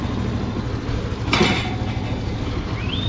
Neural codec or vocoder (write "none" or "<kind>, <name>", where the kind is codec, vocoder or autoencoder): none